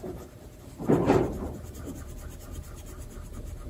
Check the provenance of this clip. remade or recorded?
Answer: remade